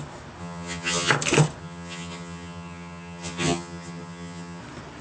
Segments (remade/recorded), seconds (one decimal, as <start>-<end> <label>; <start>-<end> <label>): 0.0-0.4 recorded; 0.4-1.1 remade; 1.1-1.6 recorded; 1.6-4.6 remade; 4.6-5.0 recorded